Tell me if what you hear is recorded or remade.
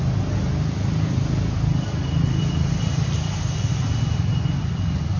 recorded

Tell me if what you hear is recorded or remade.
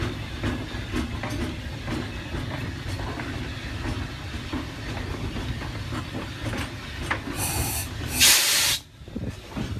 recorded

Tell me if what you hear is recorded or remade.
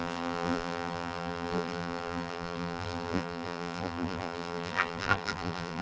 remade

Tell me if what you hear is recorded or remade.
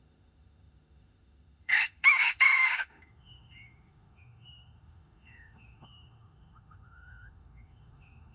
remade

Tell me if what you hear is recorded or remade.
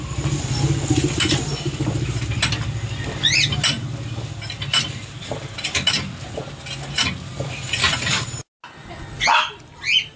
recorded